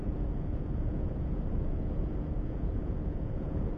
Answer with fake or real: fake